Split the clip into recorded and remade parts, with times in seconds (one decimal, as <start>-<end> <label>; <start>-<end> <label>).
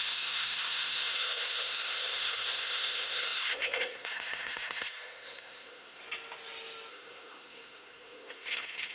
0.0-6.0 remade; 6.0-6.9 recorded; 6.9-8.9 remade